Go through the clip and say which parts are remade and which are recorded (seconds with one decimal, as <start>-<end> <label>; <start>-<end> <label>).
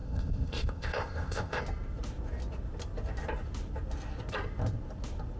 0.0-1.6 remade; 1.6-5.4 recorded